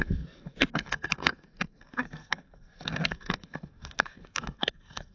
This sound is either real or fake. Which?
fake